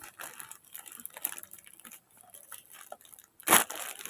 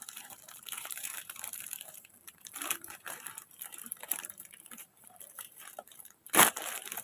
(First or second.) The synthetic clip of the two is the second